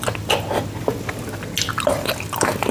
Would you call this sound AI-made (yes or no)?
no